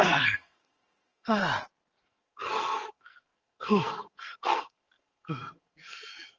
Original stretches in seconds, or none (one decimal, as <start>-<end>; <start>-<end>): 1.4-2.0